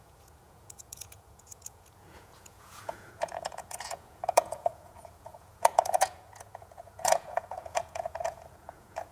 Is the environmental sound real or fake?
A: fake